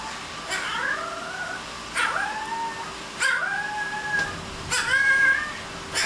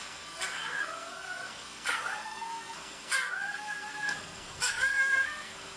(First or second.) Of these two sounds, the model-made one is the second